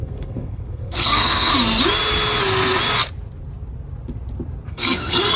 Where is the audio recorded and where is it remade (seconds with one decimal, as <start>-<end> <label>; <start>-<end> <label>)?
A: 0.0-1.5 remade; 1.5-4.7 recorded; 4.7-5.4 remade